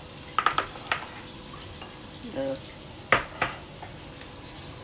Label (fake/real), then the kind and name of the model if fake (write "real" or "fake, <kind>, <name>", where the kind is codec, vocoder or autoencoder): real